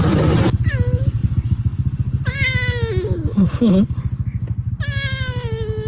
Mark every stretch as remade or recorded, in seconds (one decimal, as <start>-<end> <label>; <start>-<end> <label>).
0.0-5.9 recorded